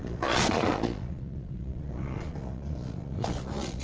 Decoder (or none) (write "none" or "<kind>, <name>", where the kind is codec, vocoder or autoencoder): vocoder, Vocos